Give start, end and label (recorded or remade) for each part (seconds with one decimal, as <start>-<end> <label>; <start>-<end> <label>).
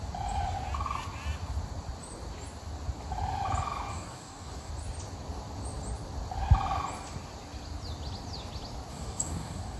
0.0-3.9 recorded; 3.9-4.7 remade; 4.7-8.9 recorded; 8.9-9.8 remade